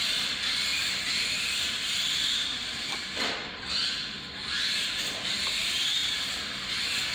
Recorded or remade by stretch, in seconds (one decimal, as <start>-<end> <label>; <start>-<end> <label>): 0.0-7.1 recorded